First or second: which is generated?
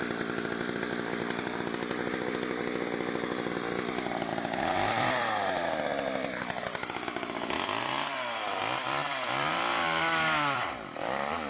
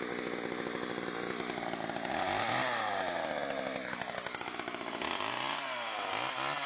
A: first